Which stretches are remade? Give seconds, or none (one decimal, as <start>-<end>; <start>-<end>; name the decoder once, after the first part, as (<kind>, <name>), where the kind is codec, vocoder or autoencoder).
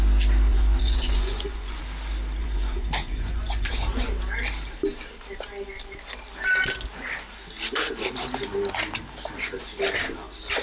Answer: 0.5-1.8 (vocoder, Vocos); 2.4-4.1